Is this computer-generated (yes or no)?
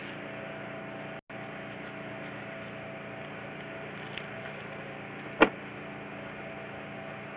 no